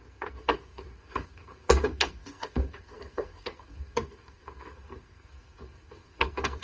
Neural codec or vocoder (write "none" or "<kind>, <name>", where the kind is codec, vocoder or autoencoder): codec, SNAC